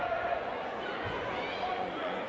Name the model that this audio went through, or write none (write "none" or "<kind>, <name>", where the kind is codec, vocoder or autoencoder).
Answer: vocoder, Vocos